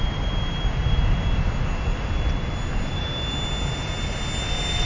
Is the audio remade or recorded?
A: recorded